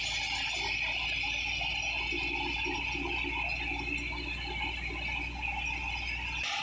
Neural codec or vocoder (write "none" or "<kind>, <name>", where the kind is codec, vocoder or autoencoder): none